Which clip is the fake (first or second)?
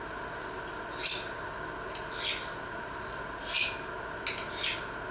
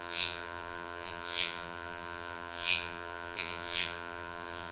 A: second